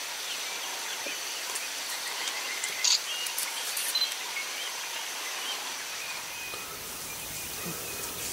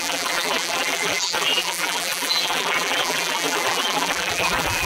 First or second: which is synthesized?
second